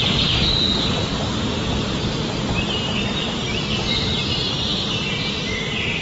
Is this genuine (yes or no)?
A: no